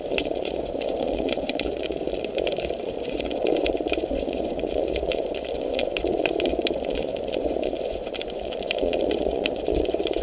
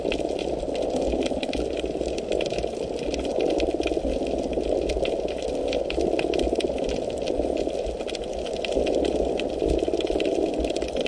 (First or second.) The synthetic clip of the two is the first